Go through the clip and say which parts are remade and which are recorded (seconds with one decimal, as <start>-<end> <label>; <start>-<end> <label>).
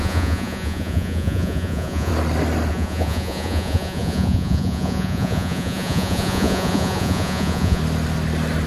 0.0-2.1 remade; 2.1-2.7 recorded; 2.7-7.8 remade; 7.8-8.7 recorded